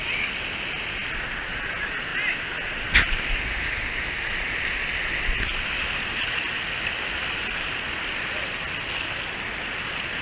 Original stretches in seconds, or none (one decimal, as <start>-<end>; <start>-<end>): 0.0-10.2